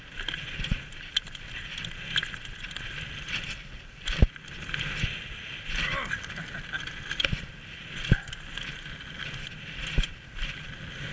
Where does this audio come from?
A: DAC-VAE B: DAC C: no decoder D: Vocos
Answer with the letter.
C